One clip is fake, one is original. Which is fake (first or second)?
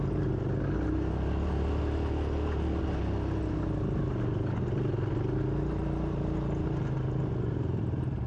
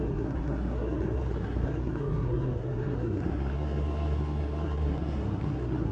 second